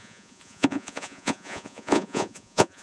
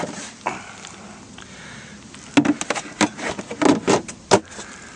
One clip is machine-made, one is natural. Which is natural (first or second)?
second